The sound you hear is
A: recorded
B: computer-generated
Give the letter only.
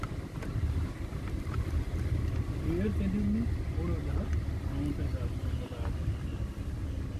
A